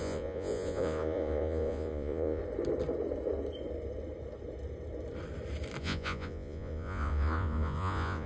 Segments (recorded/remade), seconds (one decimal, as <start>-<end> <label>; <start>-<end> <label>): 0.0-2.4 remade; 2.4-5.8 recorded; 5.8-8.3 remade